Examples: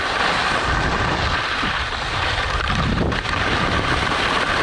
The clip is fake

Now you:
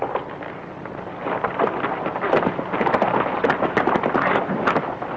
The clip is real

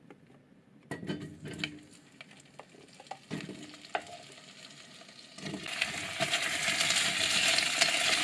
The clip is real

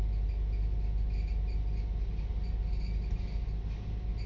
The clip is real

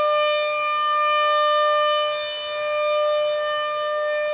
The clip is real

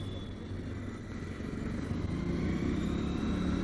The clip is real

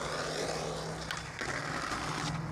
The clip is real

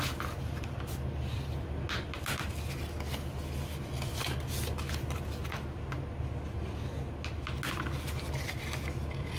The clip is real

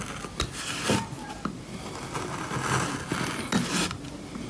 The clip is real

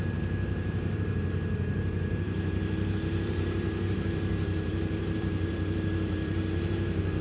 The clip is fake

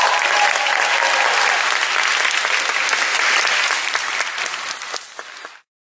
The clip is real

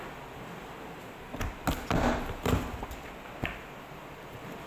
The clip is real